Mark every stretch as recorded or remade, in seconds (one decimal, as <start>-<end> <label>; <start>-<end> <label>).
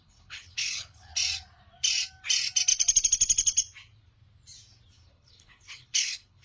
0.0-1.1 remade; 1.1-4.9 recorded; 4.9-6.4 remade